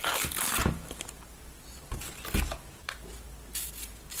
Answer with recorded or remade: recorded